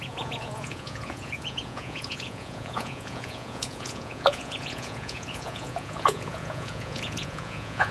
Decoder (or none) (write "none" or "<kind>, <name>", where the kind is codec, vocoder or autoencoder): vocoder, Vocos